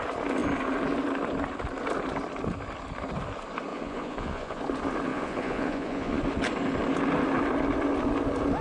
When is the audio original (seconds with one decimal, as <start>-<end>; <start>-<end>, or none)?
0.0-3.7; 4.6-5.1; 6.2-8.6